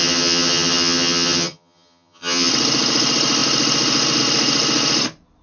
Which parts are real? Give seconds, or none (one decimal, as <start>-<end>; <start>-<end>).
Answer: 2.5-5.4